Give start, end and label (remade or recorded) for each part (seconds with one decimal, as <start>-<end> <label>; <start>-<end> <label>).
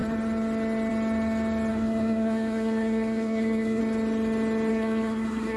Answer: 0.0-1.7 recorded; 1.7-3.8 remade; 3.8-4.7 recorded; 4.7-5.6 remade